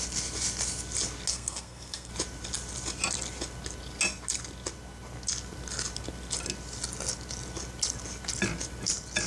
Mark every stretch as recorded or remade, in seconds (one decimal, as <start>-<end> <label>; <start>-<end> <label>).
0.0-1.3 recorded; 1.3-2.1 remade; 2.1-9.3 recorded